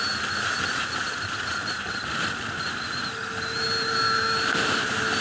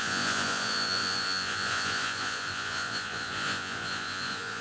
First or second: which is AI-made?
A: second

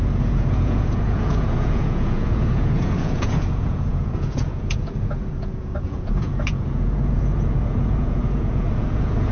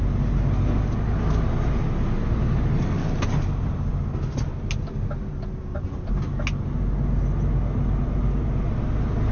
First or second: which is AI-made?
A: first